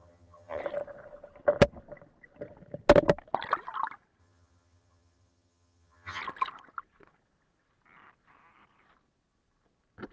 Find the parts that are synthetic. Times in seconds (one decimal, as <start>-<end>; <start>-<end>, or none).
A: 0.0-0.6; 4.2-6.2